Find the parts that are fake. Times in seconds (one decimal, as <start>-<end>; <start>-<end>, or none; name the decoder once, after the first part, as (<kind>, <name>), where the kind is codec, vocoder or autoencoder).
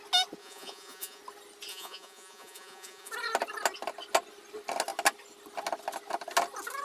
0.4-1.2 (vocoder, Vocos); 1.7-3.1